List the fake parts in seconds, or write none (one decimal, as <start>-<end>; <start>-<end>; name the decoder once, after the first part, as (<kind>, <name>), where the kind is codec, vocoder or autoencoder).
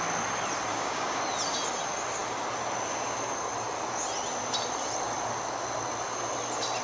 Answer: 0.7-1.2 (codec, DAC)